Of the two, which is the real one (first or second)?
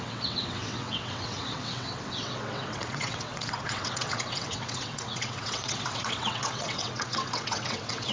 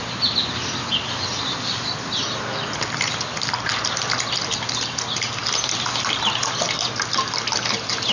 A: second